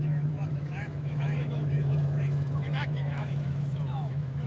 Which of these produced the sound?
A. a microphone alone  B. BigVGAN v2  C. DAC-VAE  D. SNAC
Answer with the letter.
C